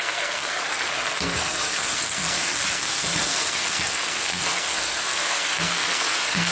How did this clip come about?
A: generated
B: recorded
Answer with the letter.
A